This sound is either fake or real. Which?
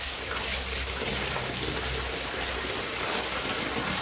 real